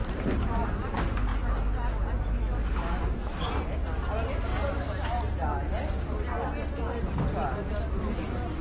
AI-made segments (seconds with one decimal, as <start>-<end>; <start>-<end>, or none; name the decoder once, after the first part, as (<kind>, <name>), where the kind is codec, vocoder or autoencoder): 0.0-0.9 (vocoder, BigVGAN v2)